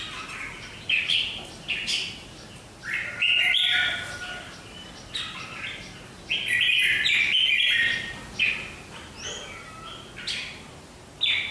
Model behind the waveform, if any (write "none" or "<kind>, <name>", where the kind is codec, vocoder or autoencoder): none